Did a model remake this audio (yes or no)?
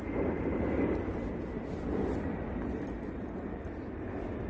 no